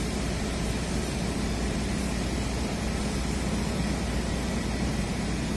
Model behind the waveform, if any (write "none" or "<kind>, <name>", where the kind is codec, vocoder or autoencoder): vocoder, BigVGAN v2